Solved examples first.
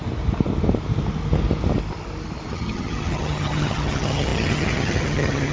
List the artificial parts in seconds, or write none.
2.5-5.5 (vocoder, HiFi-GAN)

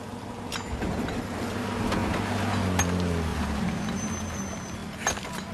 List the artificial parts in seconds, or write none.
3.3-3.8 (vocoder, BigVGAN v2)

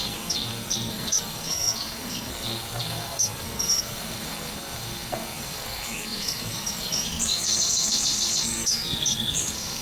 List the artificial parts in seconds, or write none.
0.0-9.8 (codec, SNAC)

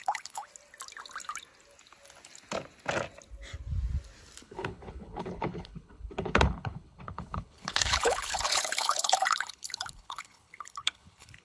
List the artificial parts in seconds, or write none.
0.0-0.5 (codec, HILCodec); 4.4-11.4